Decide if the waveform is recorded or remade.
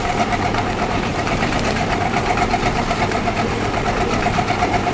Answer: remade